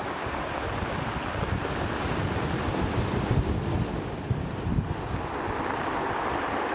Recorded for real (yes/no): yes